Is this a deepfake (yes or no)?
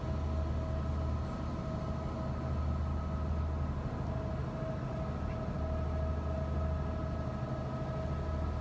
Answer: no